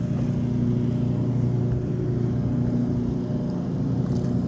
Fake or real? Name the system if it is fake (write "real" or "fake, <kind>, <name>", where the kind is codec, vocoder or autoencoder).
real